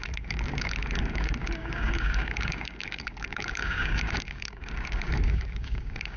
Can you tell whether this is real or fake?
fake